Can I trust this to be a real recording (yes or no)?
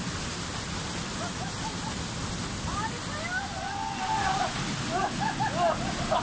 yes